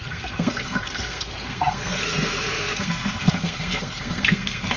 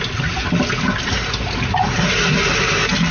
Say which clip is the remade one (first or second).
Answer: first